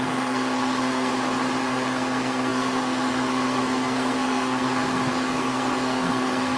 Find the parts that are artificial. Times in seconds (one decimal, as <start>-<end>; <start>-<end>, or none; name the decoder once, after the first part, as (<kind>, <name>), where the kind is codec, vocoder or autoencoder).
0.0-1.1 (codec, SNAC); 1.6-6.6